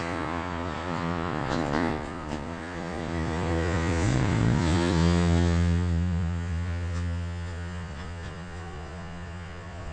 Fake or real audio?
fake